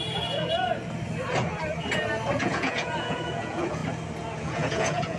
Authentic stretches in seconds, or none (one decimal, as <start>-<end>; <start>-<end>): 0.7-2.4; 3.8-4.4